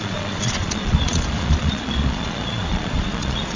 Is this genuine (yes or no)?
no